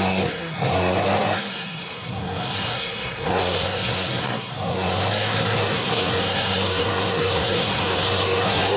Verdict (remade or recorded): remade